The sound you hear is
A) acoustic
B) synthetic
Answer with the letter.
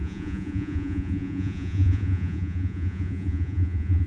B